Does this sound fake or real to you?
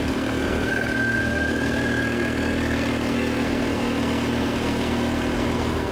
fake